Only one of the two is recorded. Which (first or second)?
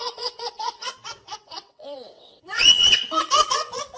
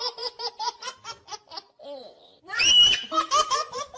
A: second